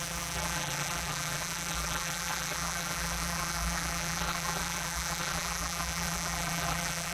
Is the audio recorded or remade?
remade